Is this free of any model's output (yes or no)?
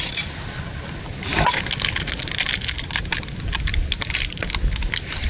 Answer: yes